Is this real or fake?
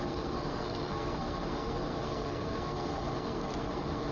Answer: fake